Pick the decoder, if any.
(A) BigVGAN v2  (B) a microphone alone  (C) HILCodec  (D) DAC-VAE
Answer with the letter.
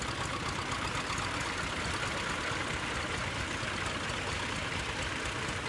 B